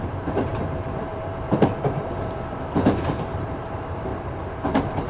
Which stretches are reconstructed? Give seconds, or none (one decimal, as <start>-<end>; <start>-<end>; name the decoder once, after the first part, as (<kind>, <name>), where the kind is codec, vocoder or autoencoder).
0.0-4.1 (vocoder, BigVGAN v2)